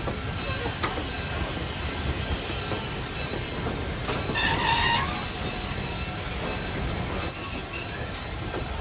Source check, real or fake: real